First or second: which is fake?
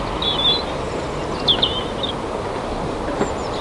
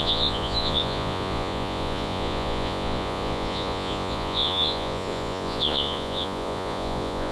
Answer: second